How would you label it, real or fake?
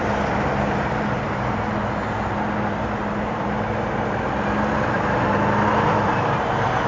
real